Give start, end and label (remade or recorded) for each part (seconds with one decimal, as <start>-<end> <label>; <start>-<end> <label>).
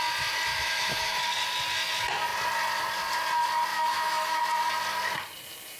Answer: 0.0-0.5 recorded; 0.5-1.2 remade; 1.2-3.7 recorded; 3.7-4.4 remade; 4.4-5.8 recorded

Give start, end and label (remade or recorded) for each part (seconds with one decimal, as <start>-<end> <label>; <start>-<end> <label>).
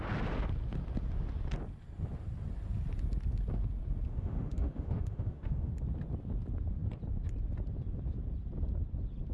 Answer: 0.0-4.1 recorded; 4.1-5.7 remade; 5.7-9.3 recorded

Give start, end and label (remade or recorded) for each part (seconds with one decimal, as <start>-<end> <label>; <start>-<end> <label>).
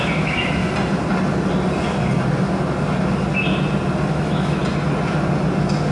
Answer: 0.0-0.6 remade; 0.6-4.1 recorded; 4.1-4.6 remade; 4.6-5.9 recorded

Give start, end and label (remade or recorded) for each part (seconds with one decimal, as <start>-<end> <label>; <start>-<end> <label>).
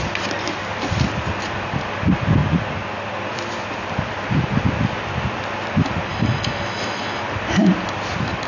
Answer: 0.0-6.1 recorded; 6.1-7.2 remade; 7.2-8.5 recorded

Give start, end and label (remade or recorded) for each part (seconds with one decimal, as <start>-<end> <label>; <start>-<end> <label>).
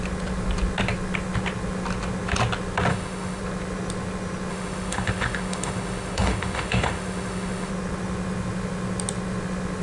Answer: 0.0-2.9 recorded; 2.9-3.4 remade; 3.4-4.5 recorded; 4.5-7.7 remade; 7.7-9.8 recorded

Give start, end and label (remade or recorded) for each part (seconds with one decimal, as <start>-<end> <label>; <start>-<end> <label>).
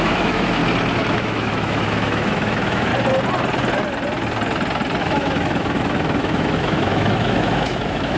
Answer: 0.0-0.6 remade; 0.6-1.1 recorded; 1.1-2.9 remade; 2.9-5.0 recorded; 5.0-8.2 remade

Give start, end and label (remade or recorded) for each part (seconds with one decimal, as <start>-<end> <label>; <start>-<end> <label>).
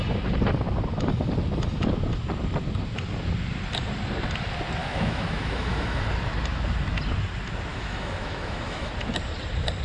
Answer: 0.0-4.8 recorded; 4.8-6.0 remade; 6.0-7.7 recorded; 7.7-8.9 remade; 8.9-9.8 recorded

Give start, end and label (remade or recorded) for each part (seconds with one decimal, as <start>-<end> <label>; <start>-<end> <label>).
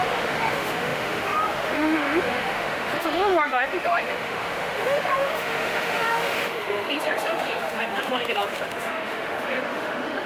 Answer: 0.0-10.3 remade